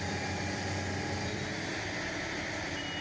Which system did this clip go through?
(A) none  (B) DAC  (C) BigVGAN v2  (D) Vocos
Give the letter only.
A